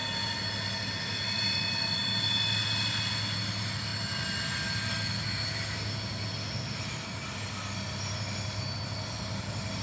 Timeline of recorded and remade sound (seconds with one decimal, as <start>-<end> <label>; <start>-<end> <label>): 0.0-9.8 recorded

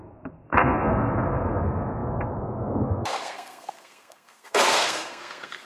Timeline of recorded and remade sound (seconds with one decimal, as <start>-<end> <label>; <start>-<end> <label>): 0.0-5.7 remade

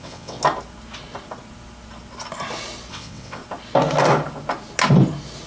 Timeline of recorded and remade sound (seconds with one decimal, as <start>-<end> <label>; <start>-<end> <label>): 0.0-0.4 remade; 0.4-2.9 recorded; 2.9-3.4 remade; 3.4-5.5 recorded

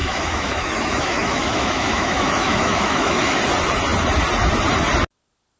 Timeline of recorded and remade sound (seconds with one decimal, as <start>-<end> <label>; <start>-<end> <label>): 0.0-3.4 remade; 3.4-5.6 recorded

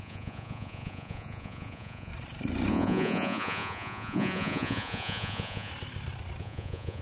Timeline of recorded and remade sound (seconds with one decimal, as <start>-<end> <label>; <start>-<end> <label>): 0.0-2.1 remade; 2.1-2.7 recorded; 2.7-5.7 remade; 5.7-6.4 recorded; 6.4-7.0 remade

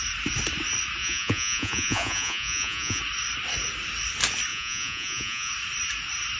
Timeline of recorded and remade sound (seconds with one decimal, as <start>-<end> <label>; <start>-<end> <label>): 0.0-1.0 recorded; 1.0-3.0 remade; 3.0-4.5 recorded; 4.5-5.5 remade; 5.5-6.4 recorded

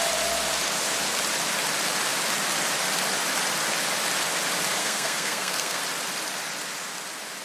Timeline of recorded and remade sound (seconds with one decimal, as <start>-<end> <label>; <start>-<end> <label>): 0.0-4.8 recorded; 4.8-5.8 remade; 5.8-7.4 recorded

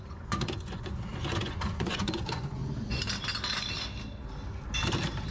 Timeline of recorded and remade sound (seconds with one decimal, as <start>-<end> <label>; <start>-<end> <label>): 0.0-2.6 remade; 2.6-5.3 recorded